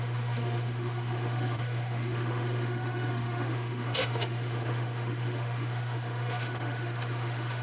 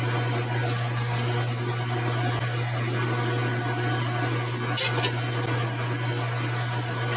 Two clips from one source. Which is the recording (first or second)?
second